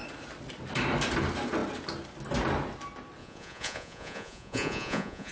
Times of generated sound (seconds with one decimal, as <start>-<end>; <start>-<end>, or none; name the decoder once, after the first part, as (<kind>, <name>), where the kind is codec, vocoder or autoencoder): 3.2-5.3 (vocoder, Vocos)